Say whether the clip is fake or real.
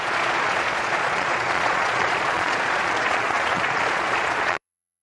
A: fake